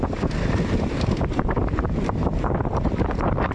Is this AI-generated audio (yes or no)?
yes